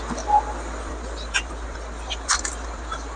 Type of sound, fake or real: real